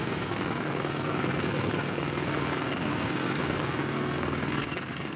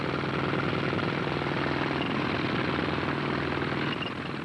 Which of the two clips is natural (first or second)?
second